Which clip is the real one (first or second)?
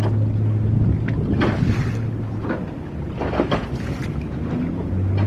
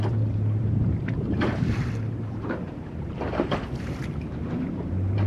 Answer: first